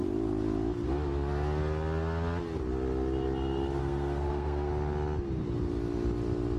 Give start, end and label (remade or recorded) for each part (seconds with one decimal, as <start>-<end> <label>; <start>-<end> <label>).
0.0-3.8 recorded; 3.8-4.7 remade; 4.7-6.6 recorded